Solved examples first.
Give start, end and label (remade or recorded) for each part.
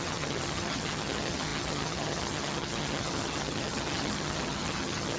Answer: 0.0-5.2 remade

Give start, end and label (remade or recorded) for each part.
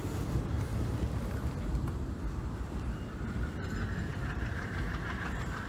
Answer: 0.0-0.7 remade; 0.7-4.1 recorded; 4.1-5.7 remade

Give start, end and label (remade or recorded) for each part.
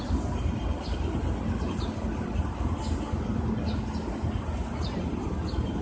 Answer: 0.0-5.8 recorded